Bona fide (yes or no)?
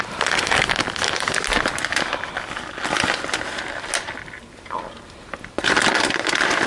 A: yes